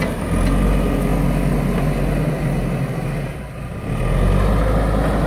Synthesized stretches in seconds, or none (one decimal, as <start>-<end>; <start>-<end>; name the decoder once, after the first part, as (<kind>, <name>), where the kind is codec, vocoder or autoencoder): none